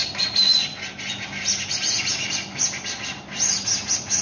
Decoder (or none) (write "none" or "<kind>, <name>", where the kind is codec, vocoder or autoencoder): none